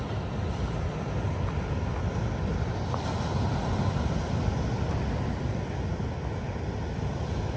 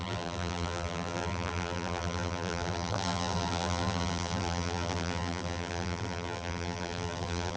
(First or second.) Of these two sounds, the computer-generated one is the second